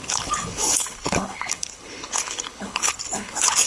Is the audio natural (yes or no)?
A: no